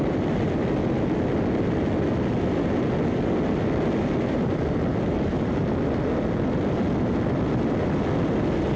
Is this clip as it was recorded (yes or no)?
yes